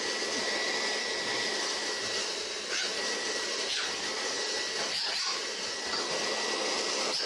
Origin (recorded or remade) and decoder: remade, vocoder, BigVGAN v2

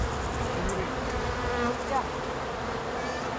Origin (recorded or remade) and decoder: recorded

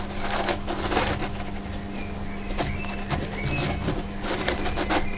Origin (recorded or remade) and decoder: recorded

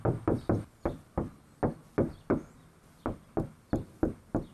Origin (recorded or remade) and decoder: recorded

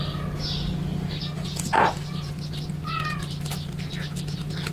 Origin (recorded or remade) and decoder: recorded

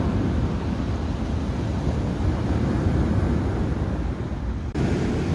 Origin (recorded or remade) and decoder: recorded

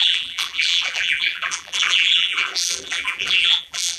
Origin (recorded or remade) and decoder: remade, vocoder, BigVGAN v2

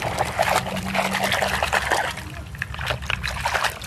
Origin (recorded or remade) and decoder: recorded